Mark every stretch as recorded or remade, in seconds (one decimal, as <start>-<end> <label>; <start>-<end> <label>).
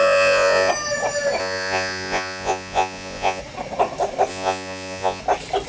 0.0-0.7 remade; 0.7-1.4 recorded; 1.4-3.4 remade; 3.4-4.3 recorded; 4.3-5.2 remade; 5.2-5.7 recorded